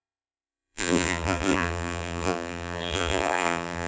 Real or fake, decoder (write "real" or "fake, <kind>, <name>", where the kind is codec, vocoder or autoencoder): fake, vocoder, BigVGAN v2